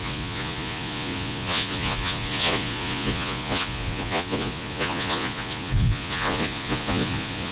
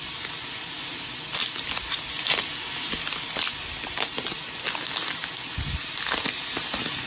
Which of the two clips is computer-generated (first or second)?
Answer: first